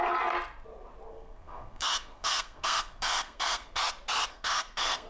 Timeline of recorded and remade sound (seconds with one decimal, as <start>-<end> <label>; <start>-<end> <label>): 0.0-1.1 recorded; 1.1-3.8 remade; 3.8-4.3 recorded; 4.3-5.1 remade

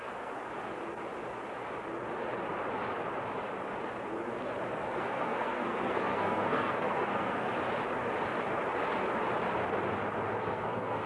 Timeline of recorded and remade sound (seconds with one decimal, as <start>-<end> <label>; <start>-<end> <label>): 0.0-0.4 remade; 0.4-4.7 recorded; 4.7-7.6 remade; 7.6-10.4 recorded; 10.4-11.1 remade

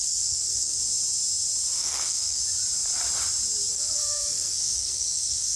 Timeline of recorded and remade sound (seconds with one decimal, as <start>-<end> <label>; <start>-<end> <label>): 0.0-0.8 remade; 0.8-1.8 recorded; 1.8-2.4 remade; 2.4-3.7 recorded; 3.7-5.6 remade

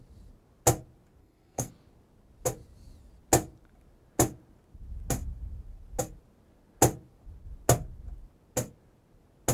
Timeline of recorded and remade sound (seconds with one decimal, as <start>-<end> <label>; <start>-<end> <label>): 0.0-1.2 recorded; 1.2-1.7 remade; 1.7-9.5 recorded

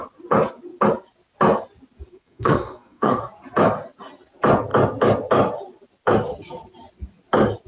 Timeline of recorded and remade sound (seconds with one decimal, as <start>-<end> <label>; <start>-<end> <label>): 0.0-2.1 recorded; 2.1-3.2 remade; 3.2-7.7 recorded

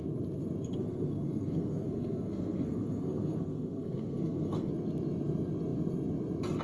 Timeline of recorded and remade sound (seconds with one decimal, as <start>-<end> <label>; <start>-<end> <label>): 0.0-0.7 recorded; 0.7-4.7 remade; 4.7-6.6 recorded

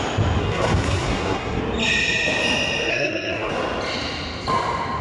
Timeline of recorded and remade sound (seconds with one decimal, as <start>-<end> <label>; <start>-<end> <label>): 0.0-0.4 recorded; 0.4-1.6 remade; 1.6-2.9 recorded; 2.9-3.5 remade; 3.5-5.0 recorded